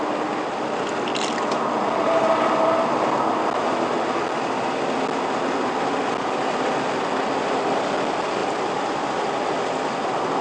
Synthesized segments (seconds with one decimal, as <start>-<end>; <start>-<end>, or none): none

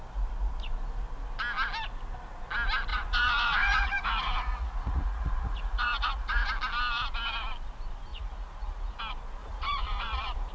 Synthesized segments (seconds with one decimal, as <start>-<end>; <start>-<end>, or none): 2.9-6.5; 8.1-9.0; 9.4-10.5

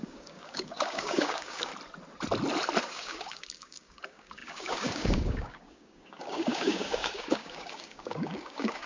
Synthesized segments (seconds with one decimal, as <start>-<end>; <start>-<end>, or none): 0.0-1.7; 2.8-8.9

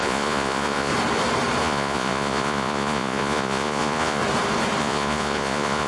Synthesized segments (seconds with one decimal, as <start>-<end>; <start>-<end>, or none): 0.0-0.9; 1.6-4.2; 4.8-5.9

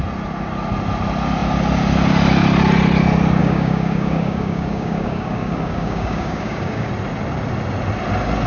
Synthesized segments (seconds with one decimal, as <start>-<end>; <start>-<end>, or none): 3.4-6.9

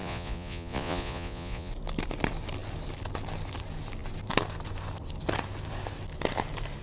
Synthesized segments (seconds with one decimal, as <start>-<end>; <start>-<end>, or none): 0.0-1.7

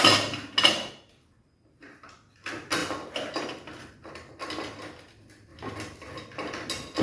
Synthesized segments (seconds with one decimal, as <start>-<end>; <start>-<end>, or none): none

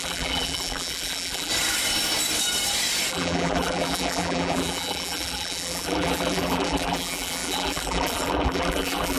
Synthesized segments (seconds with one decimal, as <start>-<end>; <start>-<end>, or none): 0.0-1.5; 3.1-9.2